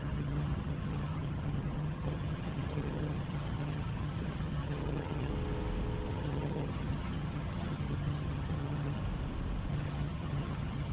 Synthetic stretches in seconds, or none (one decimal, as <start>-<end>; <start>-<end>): 0.0-5.3; 6.1-9.0; 9.7-10.9